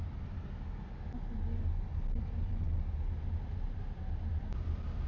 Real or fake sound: real